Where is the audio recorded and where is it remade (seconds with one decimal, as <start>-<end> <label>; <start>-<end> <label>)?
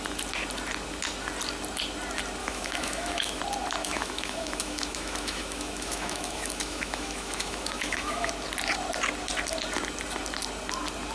0.0-2.4 recorded; 2.4-3.4 remade; 3.4-3.8 recorded; 3.8-8.3 remade; 8.3-11.1 recorded